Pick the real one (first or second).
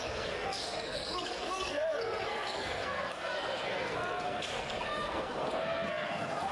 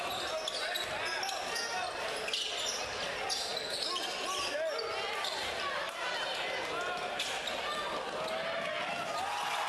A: second